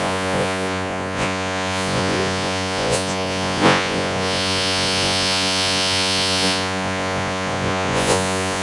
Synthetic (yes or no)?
yes